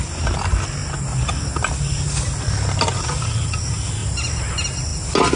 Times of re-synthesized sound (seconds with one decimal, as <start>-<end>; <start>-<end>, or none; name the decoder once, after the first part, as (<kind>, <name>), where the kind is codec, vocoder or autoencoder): none